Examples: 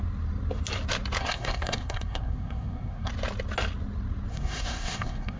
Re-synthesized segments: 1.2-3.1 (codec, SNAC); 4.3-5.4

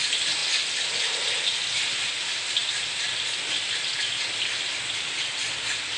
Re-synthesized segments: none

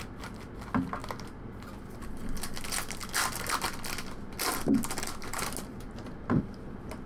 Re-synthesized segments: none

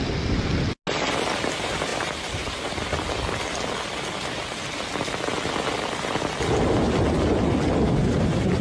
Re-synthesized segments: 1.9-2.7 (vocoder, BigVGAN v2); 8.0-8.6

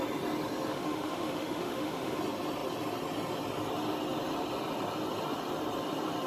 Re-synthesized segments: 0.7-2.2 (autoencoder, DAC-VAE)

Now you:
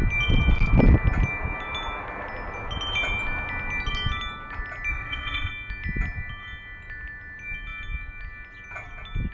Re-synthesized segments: 4.9-5.5 (vocoder, WaveNeXt)

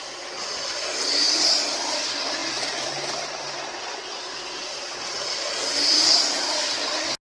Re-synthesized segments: none

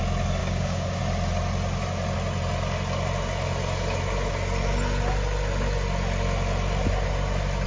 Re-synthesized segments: 0.4-1.0 (codec, DAC)